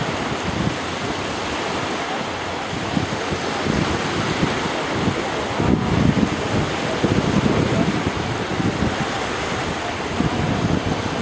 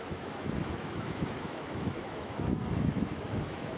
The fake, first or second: second